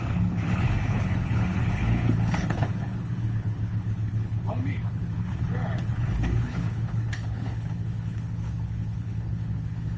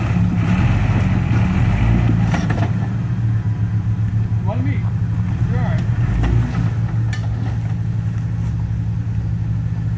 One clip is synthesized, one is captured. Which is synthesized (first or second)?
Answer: first